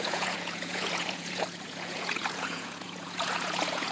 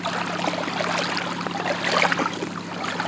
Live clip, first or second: second